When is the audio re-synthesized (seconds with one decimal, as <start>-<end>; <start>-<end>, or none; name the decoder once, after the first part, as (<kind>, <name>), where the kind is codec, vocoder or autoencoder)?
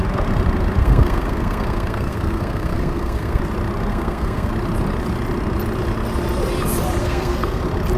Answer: 0.8-3.4 (codec, SNAC); 3.9-4.5; 7.0-7.6